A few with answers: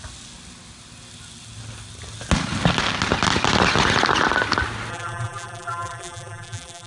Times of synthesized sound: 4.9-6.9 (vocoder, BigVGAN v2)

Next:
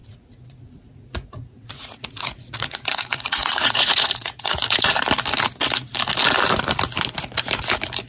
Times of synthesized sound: 0.0-4.9 (vocoder, Vocos)

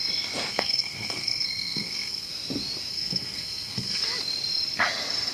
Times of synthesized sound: 0.5-2.3 (codec, SNAC); 2.9-4.0

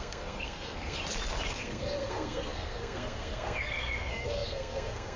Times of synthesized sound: 0.0-1.0 (codec, SNAC); 1.5-5.2

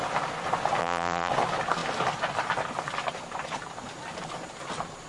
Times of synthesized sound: 0.8-1.3 (vocoder, BigVGAN v2)

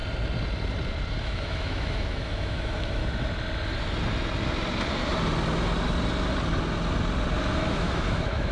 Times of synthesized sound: 1.2-3.0 (autoencoder, DAC-VAE); 7.4-8.5